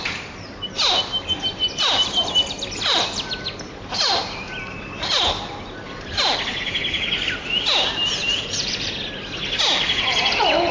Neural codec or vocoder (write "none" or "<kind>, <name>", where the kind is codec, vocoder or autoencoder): none